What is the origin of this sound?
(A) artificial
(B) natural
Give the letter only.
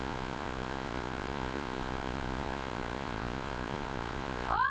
A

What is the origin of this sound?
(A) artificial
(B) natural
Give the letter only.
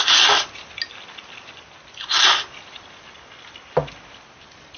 B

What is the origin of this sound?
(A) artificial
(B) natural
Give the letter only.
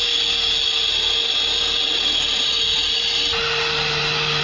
B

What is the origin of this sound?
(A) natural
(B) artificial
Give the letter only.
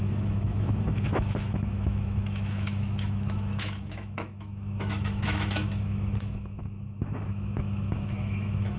B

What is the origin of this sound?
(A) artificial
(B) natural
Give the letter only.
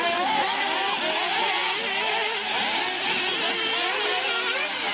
B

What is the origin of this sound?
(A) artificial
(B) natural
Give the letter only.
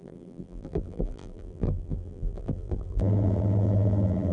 A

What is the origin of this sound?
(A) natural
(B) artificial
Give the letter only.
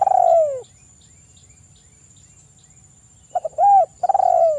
A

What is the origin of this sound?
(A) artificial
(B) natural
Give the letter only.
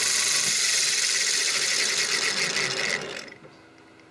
B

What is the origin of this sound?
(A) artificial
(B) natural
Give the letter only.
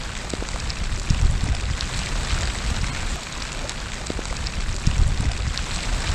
B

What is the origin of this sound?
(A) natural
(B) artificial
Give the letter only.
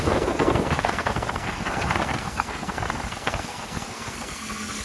B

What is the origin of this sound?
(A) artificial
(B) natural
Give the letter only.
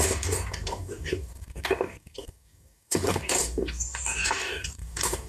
A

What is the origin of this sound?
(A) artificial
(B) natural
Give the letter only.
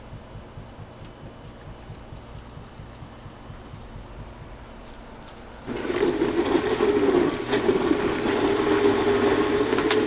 B